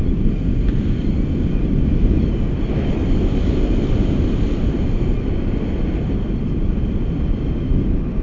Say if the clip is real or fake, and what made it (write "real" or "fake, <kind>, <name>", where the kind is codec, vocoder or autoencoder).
real